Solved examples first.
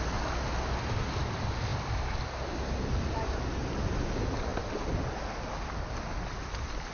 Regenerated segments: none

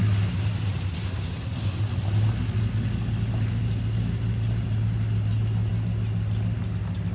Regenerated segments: none

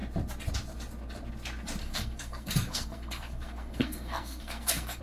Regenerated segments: 1.8-5.0 (codec, SNAC)